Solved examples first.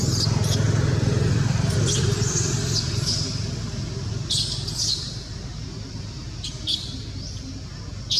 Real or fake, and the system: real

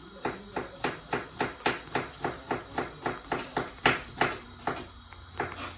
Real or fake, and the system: real